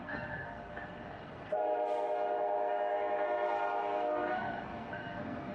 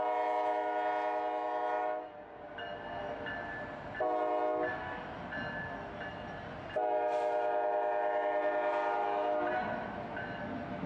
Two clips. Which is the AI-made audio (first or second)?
first